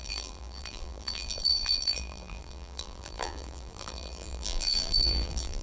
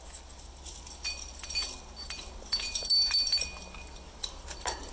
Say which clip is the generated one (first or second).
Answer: first